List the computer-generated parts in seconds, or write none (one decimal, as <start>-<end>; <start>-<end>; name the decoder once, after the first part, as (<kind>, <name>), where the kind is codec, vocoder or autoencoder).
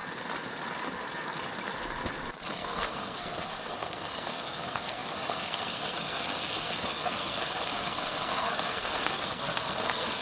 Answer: 2.5-10.2 (codec, SNAC)